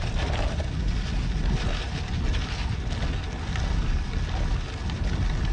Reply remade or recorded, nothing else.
recorded